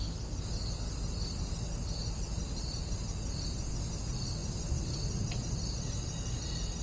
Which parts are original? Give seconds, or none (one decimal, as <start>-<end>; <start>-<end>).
0.0-2.8; 3.4-6.8